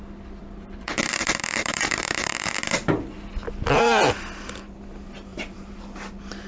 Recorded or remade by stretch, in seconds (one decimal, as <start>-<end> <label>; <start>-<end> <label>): 0.0-0.4 recorded; 0.4-2.5 remade; 2.5-5.3 recorded; 5.3-5.8 remade; 5.8-6.5 recorded